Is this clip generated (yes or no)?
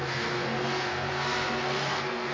yes